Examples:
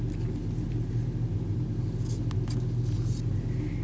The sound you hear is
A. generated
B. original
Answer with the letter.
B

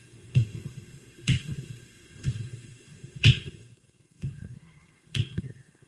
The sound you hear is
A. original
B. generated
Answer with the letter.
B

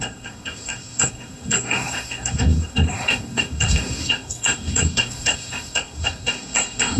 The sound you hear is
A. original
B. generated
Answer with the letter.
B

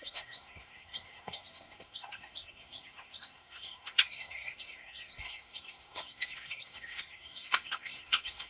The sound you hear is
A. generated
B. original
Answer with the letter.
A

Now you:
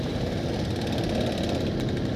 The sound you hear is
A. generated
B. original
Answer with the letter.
B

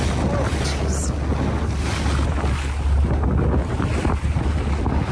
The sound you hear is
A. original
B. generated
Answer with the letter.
A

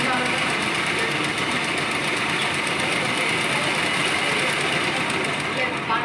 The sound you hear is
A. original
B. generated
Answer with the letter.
A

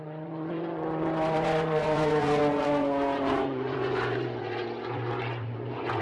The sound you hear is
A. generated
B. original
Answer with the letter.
A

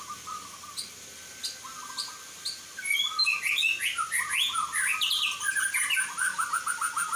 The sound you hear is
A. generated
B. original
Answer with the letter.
B